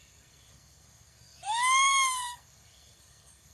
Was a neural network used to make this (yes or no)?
yes